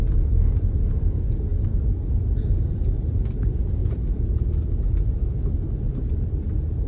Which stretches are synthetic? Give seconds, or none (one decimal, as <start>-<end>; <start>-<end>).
none